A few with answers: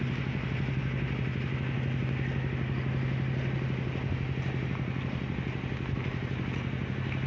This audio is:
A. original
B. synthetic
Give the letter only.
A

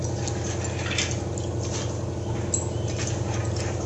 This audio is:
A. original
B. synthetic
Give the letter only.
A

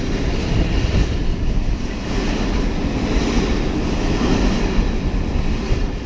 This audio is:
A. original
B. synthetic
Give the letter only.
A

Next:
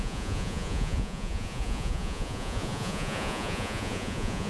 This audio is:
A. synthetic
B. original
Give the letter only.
A